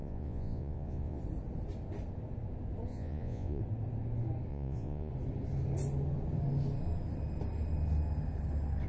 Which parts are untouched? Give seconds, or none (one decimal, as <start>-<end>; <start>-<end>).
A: 1.2-2.9; 3.6-4.5; 5.1-8.9